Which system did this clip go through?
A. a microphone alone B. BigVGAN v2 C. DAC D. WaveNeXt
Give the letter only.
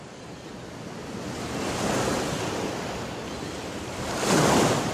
A